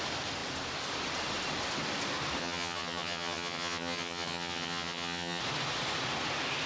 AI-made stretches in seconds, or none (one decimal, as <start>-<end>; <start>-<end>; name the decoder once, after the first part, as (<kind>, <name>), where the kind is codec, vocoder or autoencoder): 2.4-5.4 (vocoder, HiFi-GAN)